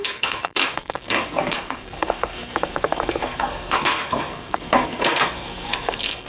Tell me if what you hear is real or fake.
fake